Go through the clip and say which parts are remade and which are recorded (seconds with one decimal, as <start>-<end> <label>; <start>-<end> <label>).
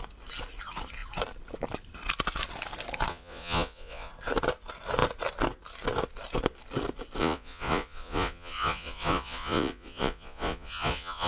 0.0-3.1 recorded; 3.1-4.1 remade; 4.1-7.2 recorded; 7.2-11.3 remade